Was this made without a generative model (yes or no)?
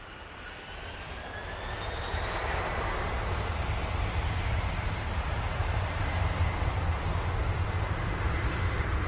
yes